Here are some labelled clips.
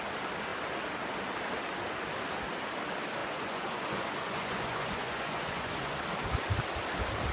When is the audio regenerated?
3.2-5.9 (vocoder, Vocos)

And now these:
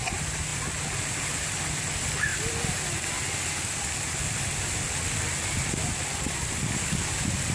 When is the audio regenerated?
none

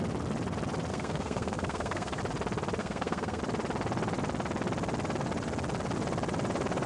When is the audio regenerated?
0.9-2.2 (codec, SNAC); 2.8-3.4

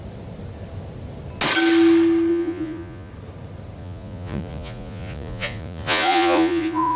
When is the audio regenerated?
2.3-3.1 (vocoder, Vocos); 3.8-7.0

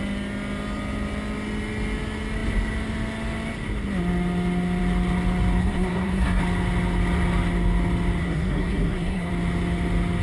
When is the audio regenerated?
5.6-6.4 (codec, SNAC); 8.2-9.3